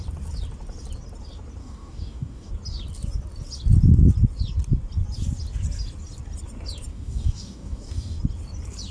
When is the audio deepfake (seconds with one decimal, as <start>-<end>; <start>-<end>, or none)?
1.6-2.5; 6.9-8.2